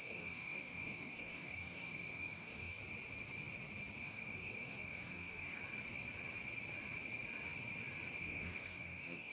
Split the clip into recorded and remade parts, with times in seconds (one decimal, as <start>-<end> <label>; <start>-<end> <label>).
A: 0.0-2.8 remade; 2.8-4.0 recorded; 4.0-5.6 remade; 5.6-8.2 recorded; 8.2-9.3 remade